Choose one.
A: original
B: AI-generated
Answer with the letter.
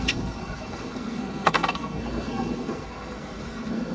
B